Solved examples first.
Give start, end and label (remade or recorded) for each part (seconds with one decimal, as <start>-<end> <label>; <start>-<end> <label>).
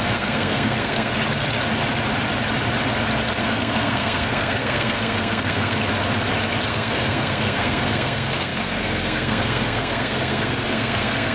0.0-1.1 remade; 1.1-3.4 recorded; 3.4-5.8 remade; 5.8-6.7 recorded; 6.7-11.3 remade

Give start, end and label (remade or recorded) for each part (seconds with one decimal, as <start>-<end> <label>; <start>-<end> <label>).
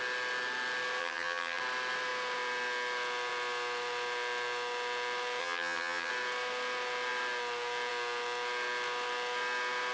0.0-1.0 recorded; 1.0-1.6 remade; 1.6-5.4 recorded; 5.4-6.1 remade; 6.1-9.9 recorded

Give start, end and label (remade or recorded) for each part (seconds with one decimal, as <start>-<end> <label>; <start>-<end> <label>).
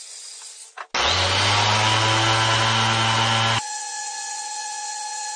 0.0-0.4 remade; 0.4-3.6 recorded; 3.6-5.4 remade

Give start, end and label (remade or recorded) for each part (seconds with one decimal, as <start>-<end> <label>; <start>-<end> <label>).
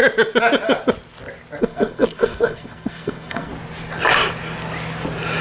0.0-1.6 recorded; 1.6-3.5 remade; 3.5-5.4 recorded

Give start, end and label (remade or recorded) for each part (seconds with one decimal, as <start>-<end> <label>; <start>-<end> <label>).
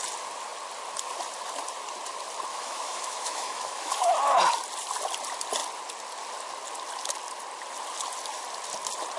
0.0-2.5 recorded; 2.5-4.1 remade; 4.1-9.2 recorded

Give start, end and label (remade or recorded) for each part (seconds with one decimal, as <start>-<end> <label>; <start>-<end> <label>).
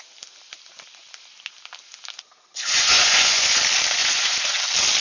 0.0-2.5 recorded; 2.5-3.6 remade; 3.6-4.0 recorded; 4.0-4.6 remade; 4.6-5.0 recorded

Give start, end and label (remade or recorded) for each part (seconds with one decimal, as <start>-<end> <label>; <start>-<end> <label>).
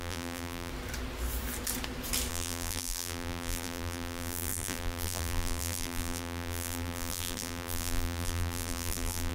0.0-0.7 remade; 0.7-2.3 recorded; 2.3-9.3 remade